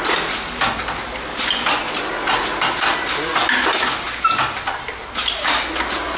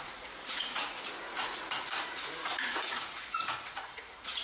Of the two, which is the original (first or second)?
first